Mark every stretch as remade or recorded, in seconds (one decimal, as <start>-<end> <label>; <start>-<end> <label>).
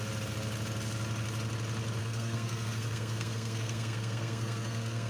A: 0.0-2.0 recorded; 2.0-5.1 remade